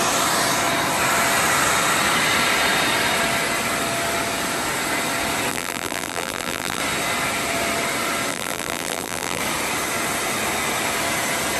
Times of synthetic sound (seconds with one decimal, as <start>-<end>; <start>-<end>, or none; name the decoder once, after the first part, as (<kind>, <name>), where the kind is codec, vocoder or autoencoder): 5.5-6.8 (vocoder, BigVGAN v2); 8.3-9.4